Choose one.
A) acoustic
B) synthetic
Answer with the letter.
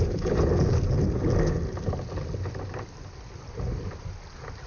A